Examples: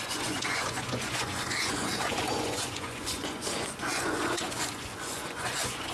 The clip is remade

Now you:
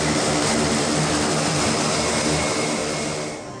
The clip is remade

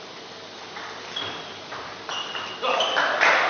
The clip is recorded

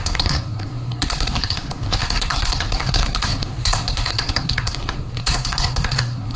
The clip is remade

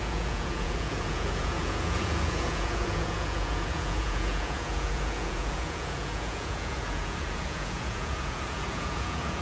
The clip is remade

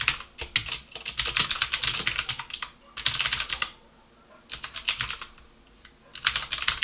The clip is recorded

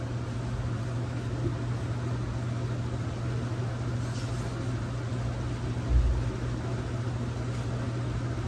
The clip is recorded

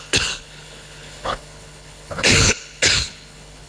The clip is remade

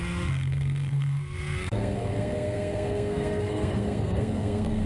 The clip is remade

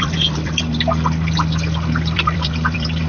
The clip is remade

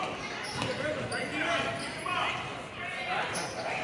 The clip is recorded